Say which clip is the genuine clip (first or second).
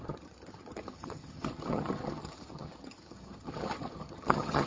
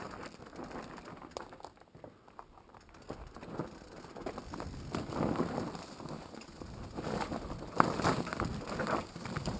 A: second